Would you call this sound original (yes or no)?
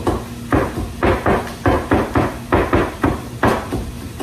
yes